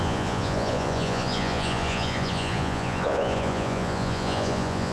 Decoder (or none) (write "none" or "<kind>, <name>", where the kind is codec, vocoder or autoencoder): vocoder, Vocos